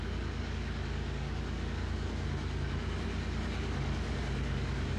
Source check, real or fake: fake